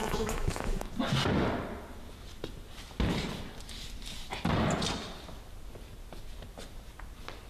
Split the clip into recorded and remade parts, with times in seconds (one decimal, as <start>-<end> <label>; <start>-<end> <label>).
0.0-0.9 remade; 0.9-7.5 recorded